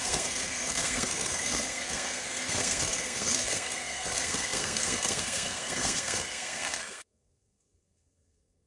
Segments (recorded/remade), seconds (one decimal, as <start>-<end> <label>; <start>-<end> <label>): 0.0-8.7 remade